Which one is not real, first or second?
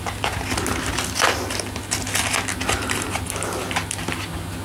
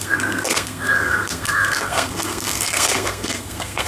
second